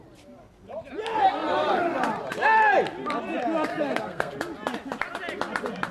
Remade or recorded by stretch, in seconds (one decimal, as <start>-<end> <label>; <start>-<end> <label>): 0.0-3.7 recorded; 3.7-4.3 remade; 4.3-5.9 recorded